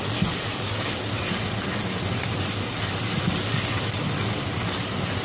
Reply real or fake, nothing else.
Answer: real